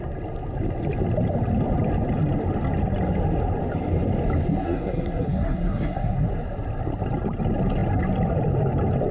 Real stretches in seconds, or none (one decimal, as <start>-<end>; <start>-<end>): 0.0-4.6; 6.3-9.1